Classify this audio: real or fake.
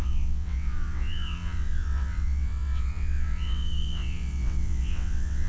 fake